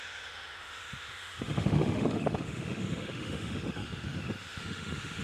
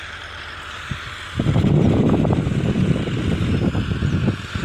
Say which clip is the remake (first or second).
first